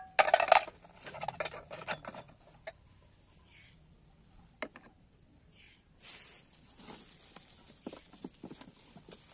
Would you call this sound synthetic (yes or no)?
no